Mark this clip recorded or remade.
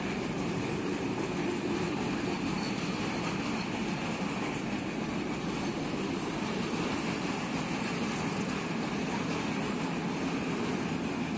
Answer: recorded